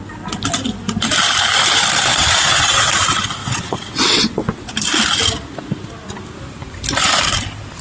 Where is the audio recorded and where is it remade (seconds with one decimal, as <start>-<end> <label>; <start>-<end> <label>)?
0.0-2.1 recorded; 2.1-2.9 remade; 2.9-3.4 recorded; 3.4-4.7 remade; 4.7-7.8 recorded